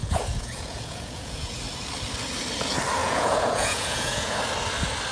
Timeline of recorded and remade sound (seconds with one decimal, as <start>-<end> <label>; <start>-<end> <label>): 0.0-1.6 remade; 1.6-3.0 recorded; 3.0-4.4 remade; 4.4-5.1 recorded